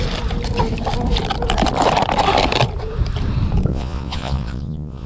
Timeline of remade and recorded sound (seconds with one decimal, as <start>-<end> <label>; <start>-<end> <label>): 0.0-3.7 recorded; 3.7-5.1 remade